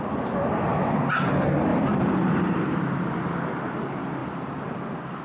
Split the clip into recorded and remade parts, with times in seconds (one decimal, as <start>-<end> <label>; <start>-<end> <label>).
0.0-1.7 recorded; 1.7-2.8 remade; 2.8-4.2 recorded; 4.2-4.8 remade; 4.8-5.2 recorded